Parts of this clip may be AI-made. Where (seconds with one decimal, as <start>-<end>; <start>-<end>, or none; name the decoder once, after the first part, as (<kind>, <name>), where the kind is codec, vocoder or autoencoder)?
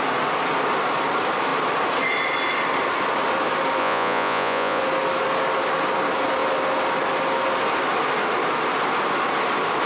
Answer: 3.8-4.8 (vocoder, Vocos)